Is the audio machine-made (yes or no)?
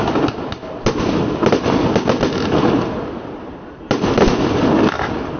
no